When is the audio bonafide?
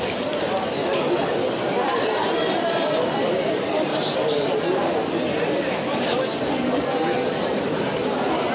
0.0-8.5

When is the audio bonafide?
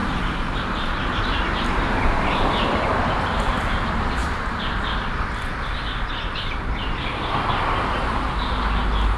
3.5-9.2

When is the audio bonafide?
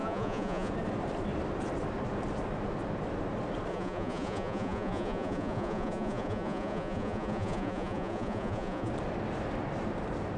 0.7-3.7; 8.9-10.4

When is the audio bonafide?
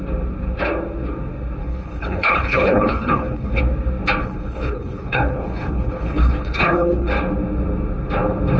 0.0-1.6; 3.6-4.2; 7.1-8.6